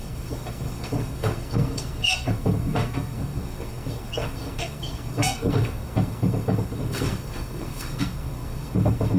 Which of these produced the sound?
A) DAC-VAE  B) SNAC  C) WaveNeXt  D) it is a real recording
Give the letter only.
B